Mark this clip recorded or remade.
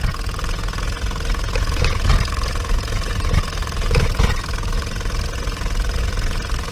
remade